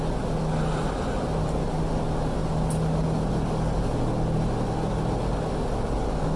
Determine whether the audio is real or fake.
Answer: real